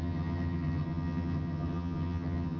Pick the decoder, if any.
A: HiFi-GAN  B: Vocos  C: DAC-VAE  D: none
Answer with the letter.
A